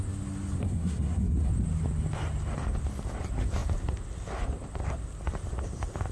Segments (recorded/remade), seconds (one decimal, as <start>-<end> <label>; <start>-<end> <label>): 0.0-0.6 recorded; 0.6-1.5 remade; 1.5-6.1 recorded